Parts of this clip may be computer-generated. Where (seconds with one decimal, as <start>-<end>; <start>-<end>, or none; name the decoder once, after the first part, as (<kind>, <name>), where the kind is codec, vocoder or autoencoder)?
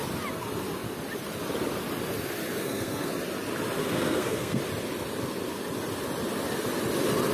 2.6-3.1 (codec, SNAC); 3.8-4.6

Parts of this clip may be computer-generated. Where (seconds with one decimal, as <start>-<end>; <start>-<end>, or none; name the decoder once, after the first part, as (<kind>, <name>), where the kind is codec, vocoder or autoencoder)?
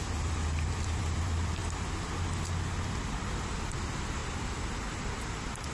0.0-1.6 (vocoder, BigVGAN v2); 2.9-4.2; 5.0-5.7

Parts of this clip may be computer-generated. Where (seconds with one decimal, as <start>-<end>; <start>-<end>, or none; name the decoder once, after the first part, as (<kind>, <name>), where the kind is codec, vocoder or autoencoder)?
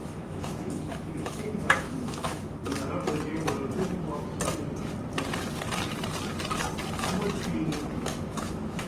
0.0-2.6 (autoencoder, DAC-VAE); 7.9-8.9